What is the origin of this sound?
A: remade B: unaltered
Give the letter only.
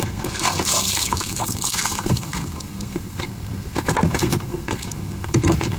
A